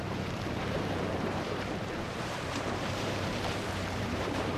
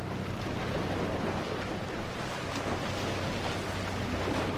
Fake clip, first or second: first